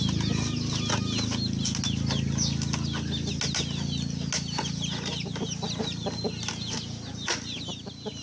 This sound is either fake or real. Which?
real